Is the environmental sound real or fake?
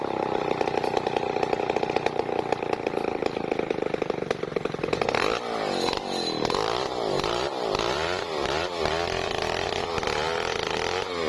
real